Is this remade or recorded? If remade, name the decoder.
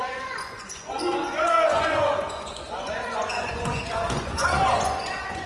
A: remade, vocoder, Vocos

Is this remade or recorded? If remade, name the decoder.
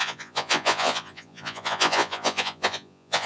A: remade, vocoder, Vocos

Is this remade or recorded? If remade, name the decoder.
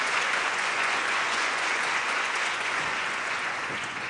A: remade, vocoder, Vocos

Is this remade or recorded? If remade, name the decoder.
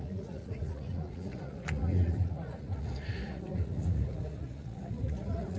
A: remade, vocoder, Vocos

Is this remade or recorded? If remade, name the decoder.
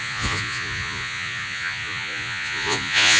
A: remade, vocoder, Vocos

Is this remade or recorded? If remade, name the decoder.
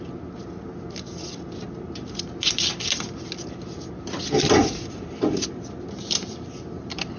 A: recorded